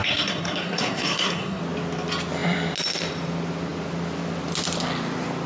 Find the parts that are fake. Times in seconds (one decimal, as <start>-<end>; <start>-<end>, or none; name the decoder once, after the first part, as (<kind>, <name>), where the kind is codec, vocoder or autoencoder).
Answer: 0.0-1.6 (codec, SNAC)